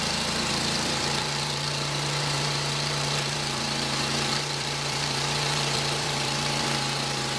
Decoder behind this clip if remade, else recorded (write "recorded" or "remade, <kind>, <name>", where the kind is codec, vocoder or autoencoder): remade, vocoder, BigVGAN v2